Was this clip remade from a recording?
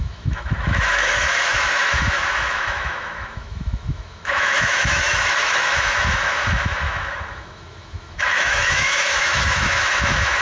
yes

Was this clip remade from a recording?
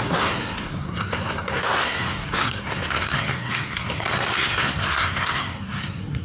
yes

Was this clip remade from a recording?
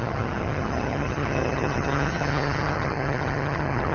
yes